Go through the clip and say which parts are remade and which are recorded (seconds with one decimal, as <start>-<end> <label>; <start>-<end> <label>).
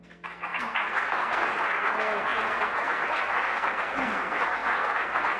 0.0-5.4 remade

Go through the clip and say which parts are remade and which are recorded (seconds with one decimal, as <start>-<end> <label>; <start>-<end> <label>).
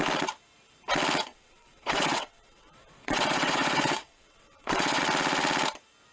0.0-1.3 recorded; 1.3-5.0 remade; 5.0-6.1 recorded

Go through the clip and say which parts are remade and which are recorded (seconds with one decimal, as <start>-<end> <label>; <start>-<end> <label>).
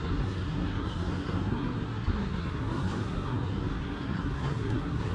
0.0-5.1 remade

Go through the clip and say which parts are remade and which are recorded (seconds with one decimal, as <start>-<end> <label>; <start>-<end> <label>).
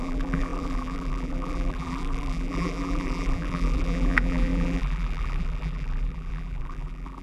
0.0-7.2 remade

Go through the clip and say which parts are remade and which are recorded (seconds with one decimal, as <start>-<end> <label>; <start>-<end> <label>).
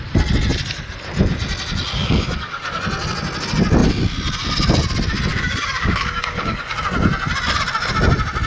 0.0-2.0 recorded; 2.0-2.8 remade; 2.8-5.3 recorded; 5.3-6.8 remade; 6.8-8.5 recorded